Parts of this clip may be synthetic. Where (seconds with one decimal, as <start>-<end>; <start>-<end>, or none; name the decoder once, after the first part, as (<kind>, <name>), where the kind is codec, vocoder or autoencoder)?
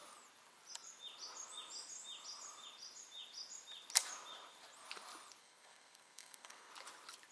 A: 5.4-6.7 (codec, SNAC)